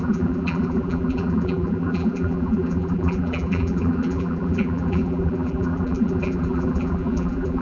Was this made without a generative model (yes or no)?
no